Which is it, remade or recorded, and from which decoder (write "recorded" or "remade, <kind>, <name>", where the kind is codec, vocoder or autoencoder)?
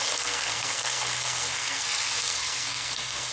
remade, codec, SNAC